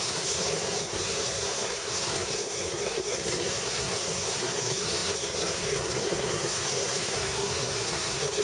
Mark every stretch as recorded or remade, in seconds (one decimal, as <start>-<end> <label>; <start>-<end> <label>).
0.0-8.4 remade